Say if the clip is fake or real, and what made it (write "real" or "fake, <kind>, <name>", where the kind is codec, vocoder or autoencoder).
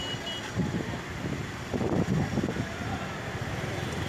real